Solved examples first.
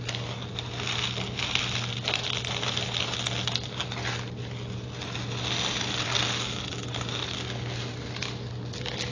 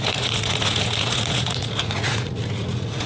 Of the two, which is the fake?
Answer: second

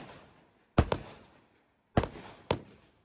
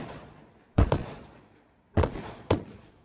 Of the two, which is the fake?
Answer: second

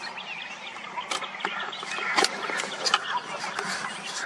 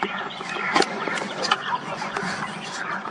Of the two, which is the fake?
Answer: second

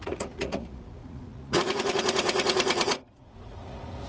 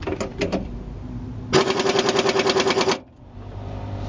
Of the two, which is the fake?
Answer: first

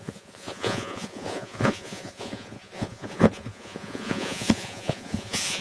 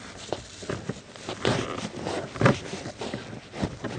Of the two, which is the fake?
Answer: first